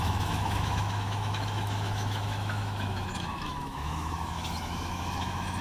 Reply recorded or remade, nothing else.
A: remade